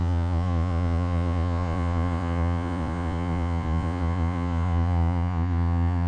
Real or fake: fake